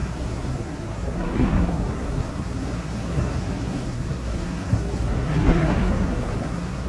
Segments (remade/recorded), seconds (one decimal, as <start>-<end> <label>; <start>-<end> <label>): 0.0-6.9 remade